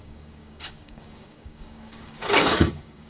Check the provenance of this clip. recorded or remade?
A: remade